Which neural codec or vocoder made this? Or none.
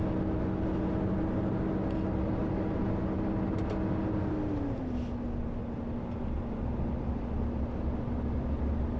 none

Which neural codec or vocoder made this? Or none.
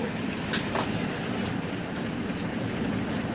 none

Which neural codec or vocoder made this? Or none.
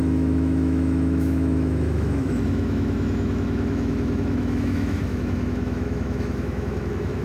autoencoder, DAC-VAE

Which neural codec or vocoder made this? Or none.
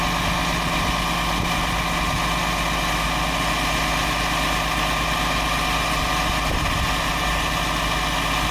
none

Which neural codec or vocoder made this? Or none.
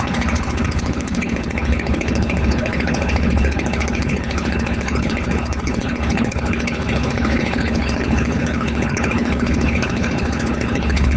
codec, HILCodec